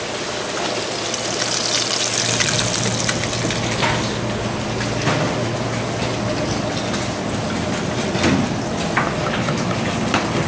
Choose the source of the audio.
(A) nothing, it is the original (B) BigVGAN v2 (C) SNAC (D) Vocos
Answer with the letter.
A